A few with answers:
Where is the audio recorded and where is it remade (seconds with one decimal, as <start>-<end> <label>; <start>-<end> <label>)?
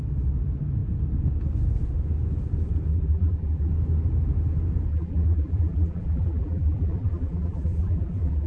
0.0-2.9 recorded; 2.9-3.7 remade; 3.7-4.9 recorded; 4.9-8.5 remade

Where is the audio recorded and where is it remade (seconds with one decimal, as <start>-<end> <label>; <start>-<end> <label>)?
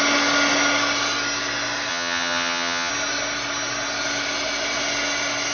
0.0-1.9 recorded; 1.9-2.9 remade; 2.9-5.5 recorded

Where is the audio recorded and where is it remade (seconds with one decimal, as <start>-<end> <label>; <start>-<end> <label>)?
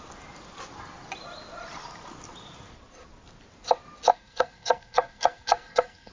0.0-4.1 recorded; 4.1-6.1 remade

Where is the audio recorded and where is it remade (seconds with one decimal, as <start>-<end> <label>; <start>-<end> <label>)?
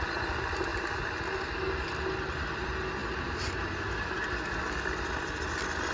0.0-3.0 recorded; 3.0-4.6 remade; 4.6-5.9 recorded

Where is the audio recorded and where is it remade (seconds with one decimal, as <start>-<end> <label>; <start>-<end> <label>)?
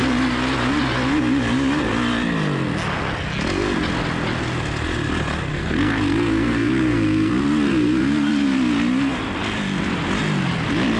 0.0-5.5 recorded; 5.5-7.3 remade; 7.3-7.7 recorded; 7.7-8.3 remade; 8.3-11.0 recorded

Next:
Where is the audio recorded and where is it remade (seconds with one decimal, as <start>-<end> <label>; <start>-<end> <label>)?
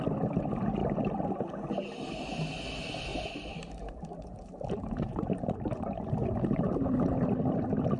0.0-0.8 recorded; 0.8-1.3 remade; 1.3-3.1 recorded; 3.1-5.7 remade; 5.7-8.0 recorded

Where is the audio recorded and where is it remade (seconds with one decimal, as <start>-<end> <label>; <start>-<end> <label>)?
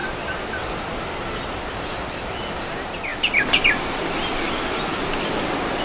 0.0-5.8 recorded